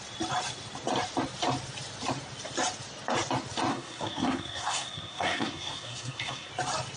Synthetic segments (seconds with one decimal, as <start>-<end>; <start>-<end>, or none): 3.7-6.5